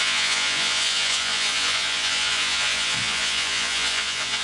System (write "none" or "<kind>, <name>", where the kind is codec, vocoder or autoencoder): vocoder, Vocos